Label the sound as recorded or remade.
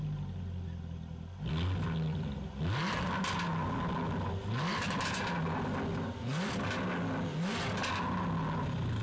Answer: recorded